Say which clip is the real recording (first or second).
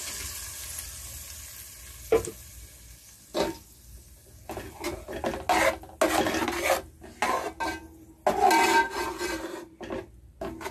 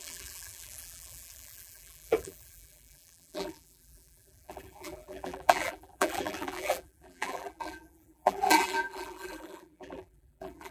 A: first